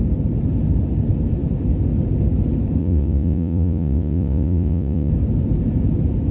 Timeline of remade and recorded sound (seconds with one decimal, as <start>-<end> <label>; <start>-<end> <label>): 0.0-2.8 recorded; 2.8-5.1 remade; 5.1-6.3 recorded